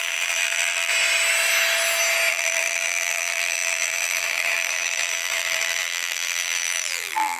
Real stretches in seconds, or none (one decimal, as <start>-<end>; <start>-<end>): 0.9-2.3